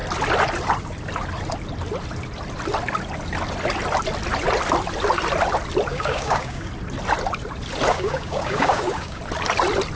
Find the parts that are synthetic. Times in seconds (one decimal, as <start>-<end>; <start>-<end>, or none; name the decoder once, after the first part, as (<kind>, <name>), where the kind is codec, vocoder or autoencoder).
5.9-6.7 (codec, DAC); 7.9-9.2